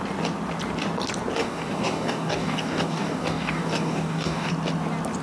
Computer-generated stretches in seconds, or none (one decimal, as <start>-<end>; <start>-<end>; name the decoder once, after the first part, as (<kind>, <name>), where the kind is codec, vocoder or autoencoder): 1.4-4.5 (codec, DAC)